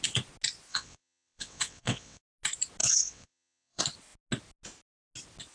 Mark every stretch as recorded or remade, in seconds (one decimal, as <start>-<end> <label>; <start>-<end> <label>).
0.0-0.7 recorded; 0.7-2.2 remade; 2.2-2.8 recorded; 2.8-3.8 remade; 3.8-5.5 recorded